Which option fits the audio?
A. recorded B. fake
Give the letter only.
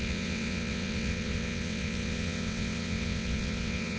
B